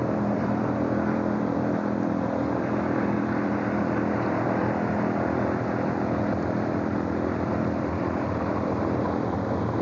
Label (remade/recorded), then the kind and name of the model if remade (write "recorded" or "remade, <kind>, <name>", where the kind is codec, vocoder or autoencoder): remade, vocoder, BigVGAN v2